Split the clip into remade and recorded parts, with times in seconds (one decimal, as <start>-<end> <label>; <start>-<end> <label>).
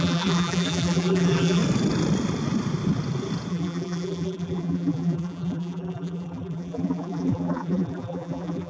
0.0-1.6 remade; 1.6-3.5 recorded; 3.5-8.7 remade